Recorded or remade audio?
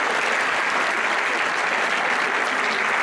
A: recorded